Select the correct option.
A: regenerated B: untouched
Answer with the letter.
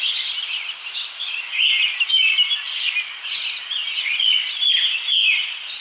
B